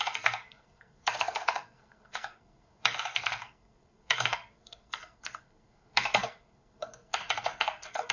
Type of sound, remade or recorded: remade